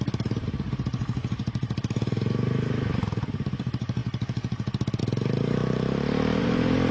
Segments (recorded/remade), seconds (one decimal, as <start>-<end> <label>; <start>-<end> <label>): 0.0-4.0 remade; 4.0-5.0 recorded; 5.0-5.6 remade; 5.6-6.4 recorded; 6.4-6.9 remade